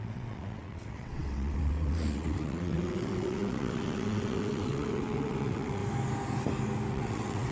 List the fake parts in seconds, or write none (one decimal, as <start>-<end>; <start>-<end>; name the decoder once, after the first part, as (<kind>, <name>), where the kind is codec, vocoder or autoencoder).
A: 0.0-5.8 (vocoder, WaveNeXt); 6.9-7.5